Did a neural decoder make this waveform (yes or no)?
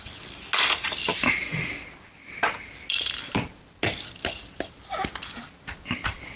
no